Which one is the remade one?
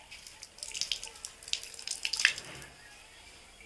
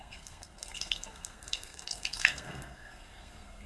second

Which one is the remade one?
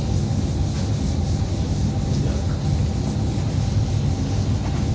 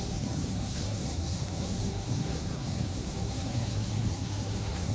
second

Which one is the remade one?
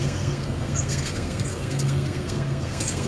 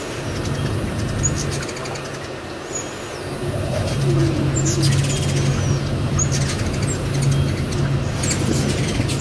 first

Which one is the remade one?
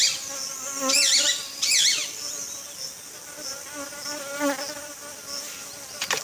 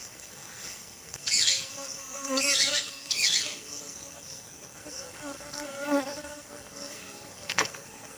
second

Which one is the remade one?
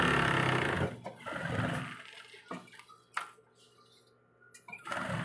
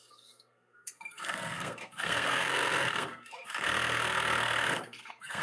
second